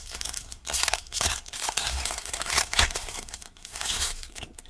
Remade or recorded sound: remade